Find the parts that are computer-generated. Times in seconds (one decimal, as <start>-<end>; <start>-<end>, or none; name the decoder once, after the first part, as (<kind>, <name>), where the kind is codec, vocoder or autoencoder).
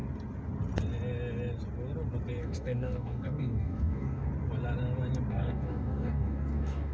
2.4-4.3 (codec, DAC); 5.3-6.9